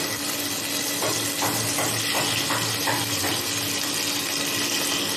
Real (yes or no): yes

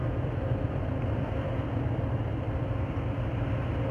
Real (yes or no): yes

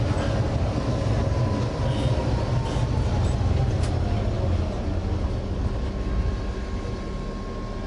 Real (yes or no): yes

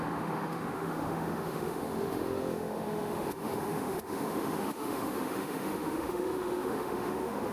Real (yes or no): no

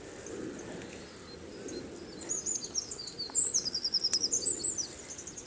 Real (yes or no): yes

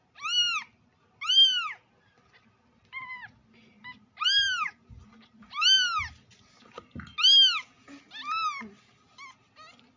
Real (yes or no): yes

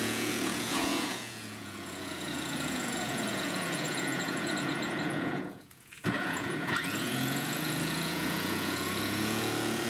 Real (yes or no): no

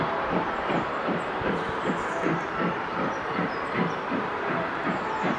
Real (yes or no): no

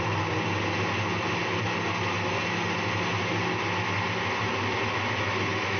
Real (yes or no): yes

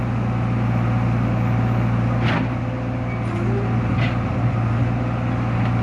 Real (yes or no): yes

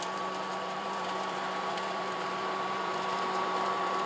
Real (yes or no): no